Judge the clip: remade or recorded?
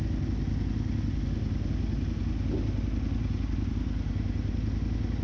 recorded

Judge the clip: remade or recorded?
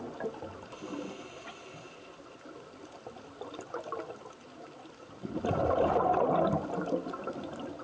recorded